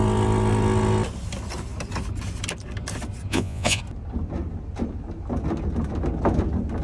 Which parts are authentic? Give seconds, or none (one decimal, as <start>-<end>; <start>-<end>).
0.0-3.3; 3.8-6.8